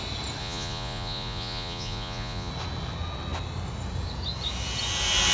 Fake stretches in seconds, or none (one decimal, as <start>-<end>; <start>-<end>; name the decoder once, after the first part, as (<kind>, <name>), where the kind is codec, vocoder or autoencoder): 0.4-2.5 (vocoder, Vocos)